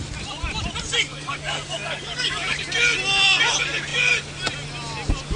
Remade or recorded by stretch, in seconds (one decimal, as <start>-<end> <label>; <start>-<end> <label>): 0.0-1.1 recorded; 1.1-2.6 remade; 2.6-5.4 recorded